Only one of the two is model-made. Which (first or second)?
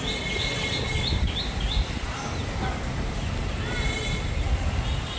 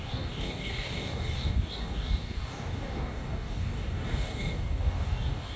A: second